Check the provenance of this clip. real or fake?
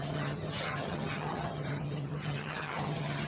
fake